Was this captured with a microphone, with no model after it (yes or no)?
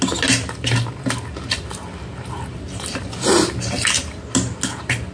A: yes